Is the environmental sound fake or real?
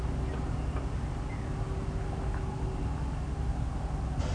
real